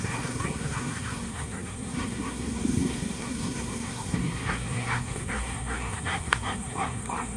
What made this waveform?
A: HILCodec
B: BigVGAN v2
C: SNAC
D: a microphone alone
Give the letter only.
C